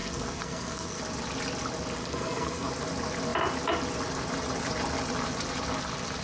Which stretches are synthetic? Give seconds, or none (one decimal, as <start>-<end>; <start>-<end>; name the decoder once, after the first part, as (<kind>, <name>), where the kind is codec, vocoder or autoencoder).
0.0-1.0 (codec, SNAC); 2.0-2.7